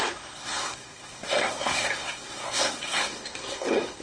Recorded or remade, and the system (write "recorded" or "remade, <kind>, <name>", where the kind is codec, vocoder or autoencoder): remade, codec, SNAC